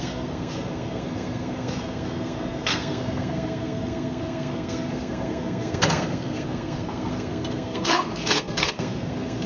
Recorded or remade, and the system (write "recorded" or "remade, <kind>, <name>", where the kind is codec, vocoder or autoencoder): remade, codec, SNAC